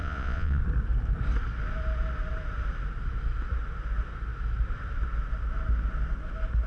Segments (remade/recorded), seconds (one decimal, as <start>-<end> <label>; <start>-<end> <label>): 0.0-0.6 remade; 0.6-6.7 recorded